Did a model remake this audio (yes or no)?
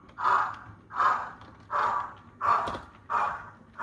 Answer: no